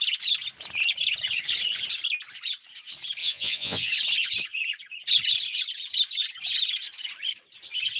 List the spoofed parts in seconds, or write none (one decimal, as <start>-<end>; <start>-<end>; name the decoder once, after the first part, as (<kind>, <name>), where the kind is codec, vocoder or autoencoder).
3.2-3.9 (vocoder, Vocos)